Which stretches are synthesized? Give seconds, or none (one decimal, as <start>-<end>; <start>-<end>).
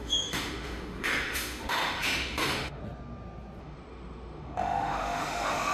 0.0-2.8; 3.6-5.7